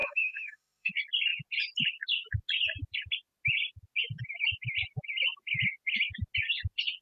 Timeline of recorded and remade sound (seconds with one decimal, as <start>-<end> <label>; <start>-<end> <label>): 0.0-0.9 remade; 0.9-7.0 recorded